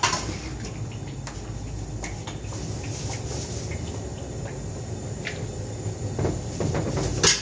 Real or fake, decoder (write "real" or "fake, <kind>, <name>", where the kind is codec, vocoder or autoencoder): real